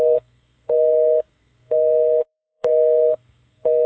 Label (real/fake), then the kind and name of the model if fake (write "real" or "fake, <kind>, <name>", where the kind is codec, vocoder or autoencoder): fake, codec, SNAC